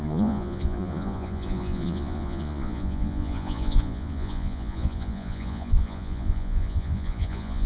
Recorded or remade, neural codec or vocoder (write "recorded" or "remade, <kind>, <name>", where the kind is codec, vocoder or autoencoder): remade, vocoder, Vocos